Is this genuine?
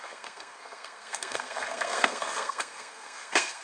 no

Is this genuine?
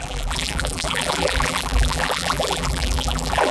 no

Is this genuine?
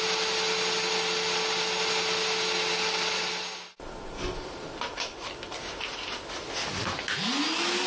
yes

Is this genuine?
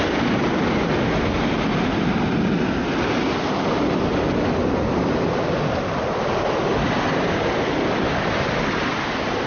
yes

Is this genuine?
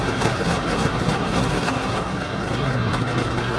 no